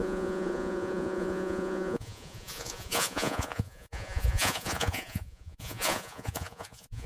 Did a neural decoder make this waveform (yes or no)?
yes